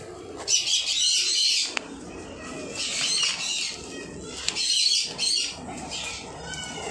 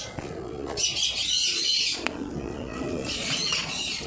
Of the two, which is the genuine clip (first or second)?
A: first